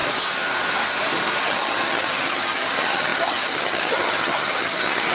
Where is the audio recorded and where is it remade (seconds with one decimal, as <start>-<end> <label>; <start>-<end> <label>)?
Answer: 0.0-1.4 recorded; 1.4-5.1 remade

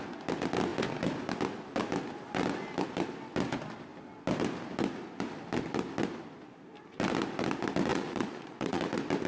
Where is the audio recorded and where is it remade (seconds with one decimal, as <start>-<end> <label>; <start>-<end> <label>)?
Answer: 0.0-7.9 recorded; 7.9-8.8 remade; 8.8-9.3 recorded

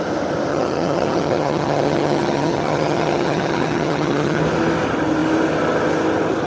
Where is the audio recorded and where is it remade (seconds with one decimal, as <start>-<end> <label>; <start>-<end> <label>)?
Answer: 0.0-0.5 recorded; 0.5-4.4 remade; 4.4-6.5 recorded

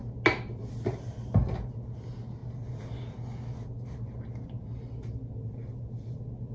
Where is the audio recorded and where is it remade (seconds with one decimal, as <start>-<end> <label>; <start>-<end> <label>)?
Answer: 0.0-6.5 recorded

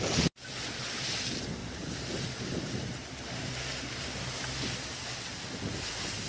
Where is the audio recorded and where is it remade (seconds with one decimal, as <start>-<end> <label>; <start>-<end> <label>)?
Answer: 0.0-6.3 recorded

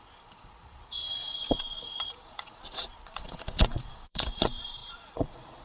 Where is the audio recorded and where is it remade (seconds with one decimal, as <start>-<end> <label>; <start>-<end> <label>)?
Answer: 0.0-5.6 remade